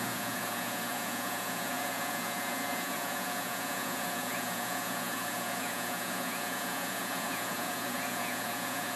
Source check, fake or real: fake